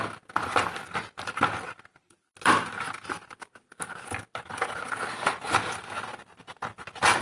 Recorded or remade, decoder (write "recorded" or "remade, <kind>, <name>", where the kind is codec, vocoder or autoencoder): recorded